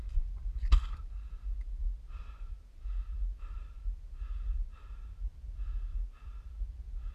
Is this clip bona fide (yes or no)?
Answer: yes